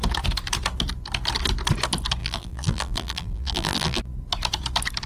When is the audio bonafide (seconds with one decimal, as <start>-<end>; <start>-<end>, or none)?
0.0-2.2; 4.0-5.1